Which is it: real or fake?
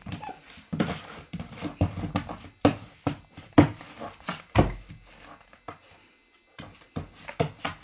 real